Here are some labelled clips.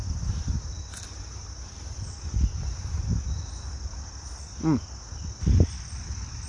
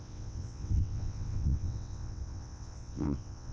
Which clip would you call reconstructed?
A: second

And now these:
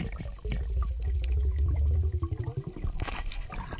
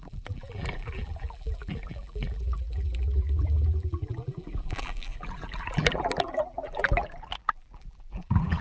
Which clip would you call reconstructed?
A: second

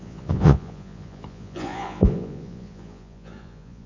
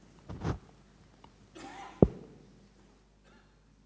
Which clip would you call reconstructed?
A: first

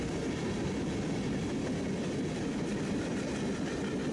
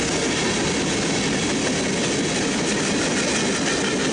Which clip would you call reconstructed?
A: first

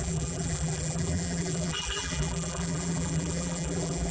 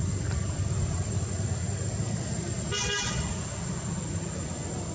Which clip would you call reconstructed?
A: first